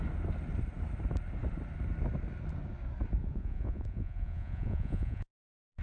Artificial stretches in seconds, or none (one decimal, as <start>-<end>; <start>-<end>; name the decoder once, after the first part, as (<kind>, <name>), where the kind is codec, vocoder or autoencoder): 3.2-5.8 (vocoder, Vocos)